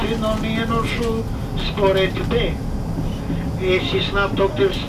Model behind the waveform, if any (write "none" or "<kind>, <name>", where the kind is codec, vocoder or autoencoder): none